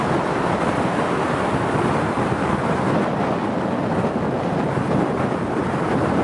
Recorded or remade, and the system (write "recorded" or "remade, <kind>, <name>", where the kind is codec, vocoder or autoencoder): recorded